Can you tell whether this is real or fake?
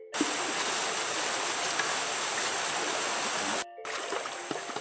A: real